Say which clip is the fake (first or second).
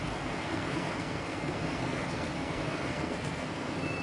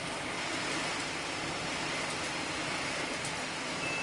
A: first